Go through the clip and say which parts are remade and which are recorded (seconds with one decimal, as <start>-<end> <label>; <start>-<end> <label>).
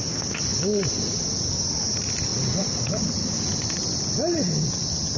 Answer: 0.0-5.2 recorded